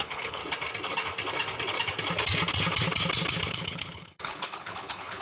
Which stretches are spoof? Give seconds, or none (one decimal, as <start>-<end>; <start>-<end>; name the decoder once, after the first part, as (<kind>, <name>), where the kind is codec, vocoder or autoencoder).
0.0-0.4 (codec, HILCodec); 3.5-5.2